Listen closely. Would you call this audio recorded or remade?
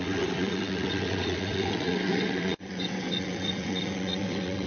remade